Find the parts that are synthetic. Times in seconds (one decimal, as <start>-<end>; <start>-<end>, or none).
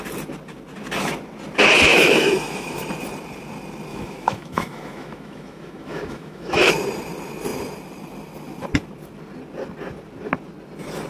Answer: 1.9-2.8; 3.9-6.7